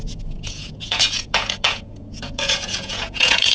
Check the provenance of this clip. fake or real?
fake